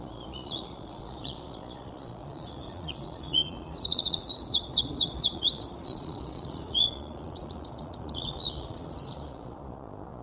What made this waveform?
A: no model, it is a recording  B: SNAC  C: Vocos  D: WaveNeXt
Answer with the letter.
C